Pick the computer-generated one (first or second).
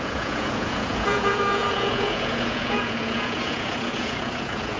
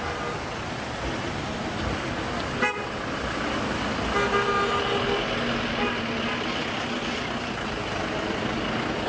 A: first